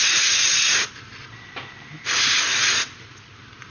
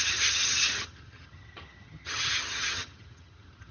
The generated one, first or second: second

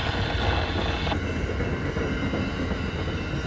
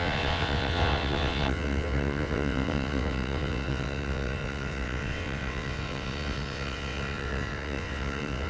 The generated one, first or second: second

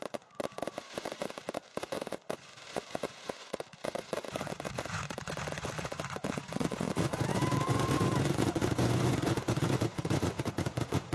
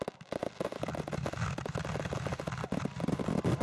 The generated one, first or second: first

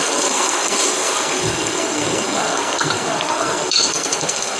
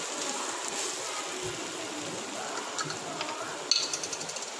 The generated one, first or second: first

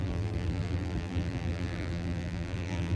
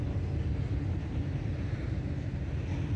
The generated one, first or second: first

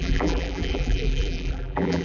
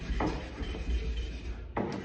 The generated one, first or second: first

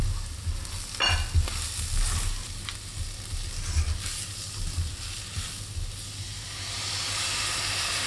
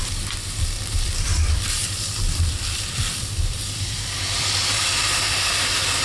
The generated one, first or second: second